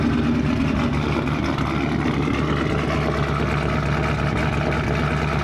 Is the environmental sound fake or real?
real